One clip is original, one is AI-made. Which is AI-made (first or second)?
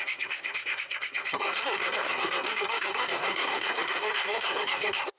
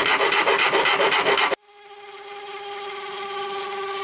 first